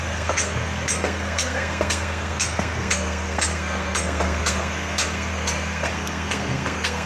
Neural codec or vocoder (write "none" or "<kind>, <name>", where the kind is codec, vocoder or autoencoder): codec, SNAC